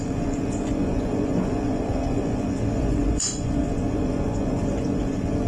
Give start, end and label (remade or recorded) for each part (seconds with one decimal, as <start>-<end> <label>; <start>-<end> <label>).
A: 0.0-5.5 remade